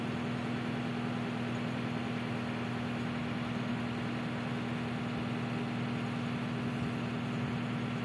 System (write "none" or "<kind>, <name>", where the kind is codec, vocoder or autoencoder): none